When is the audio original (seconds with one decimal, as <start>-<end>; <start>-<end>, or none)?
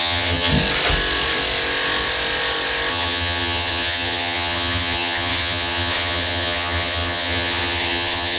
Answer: 0.5-2.9